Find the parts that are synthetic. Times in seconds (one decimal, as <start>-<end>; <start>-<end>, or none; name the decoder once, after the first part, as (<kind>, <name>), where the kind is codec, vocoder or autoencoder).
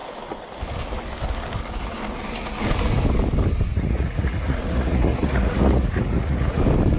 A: 3.7-6.6 (vocoder, Vocos)